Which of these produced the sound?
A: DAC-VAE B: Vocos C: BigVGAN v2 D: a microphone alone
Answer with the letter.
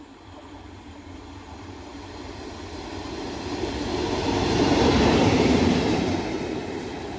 C